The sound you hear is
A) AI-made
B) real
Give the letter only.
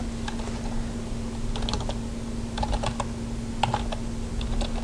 B